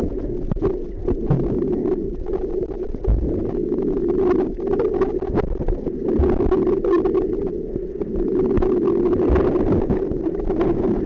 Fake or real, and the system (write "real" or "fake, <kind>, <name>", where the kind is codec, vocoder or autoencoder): real